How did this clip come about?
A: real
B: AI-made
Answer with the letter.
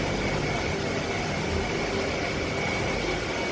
A